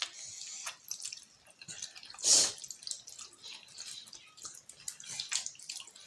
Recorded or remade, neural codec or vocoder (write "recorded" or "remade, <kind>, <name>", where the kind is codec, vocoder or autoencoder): recorded